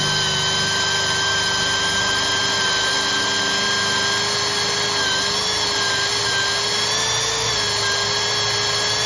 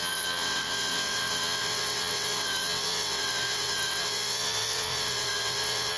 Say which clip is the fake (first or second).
second